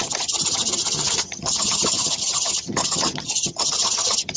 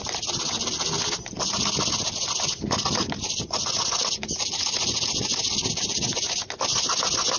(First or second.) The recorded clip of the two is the second